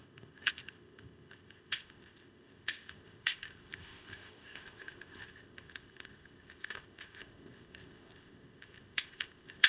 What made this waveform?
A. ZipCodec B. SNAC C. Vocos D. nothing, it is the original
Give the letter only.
A